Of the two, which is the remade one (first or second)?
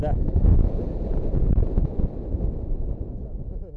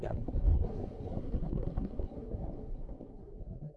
second